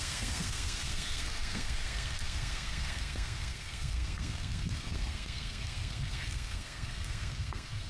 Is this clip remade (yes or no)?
yes